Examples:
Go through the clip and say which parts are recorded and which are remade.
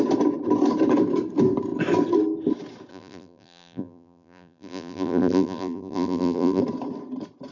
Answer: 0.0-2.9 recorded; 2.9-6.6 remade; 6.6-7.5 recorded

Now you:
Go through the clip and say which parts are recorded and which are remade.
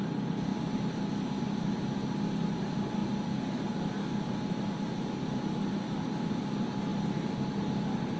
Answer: 0.0-8.2 recorded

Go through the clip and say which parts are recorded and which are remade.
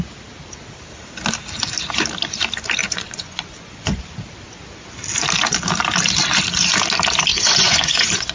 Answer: 0.0-2.8 recorded; 2.8-4.0 remade; 4.0-7.3 recorded; 7.3-8.3 remade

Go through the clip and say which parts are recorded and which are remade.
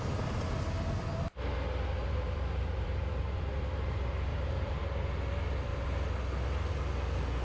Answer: 0.0-2.0 recorded; 2.0-3.2 remade; 3.2-4.3 recorded; 4.3-4.8 remade; 4.8-7.4 recorded